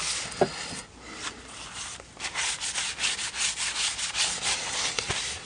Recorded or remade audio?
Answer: recorded